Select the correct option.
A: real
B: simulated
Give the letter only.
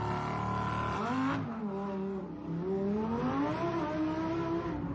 A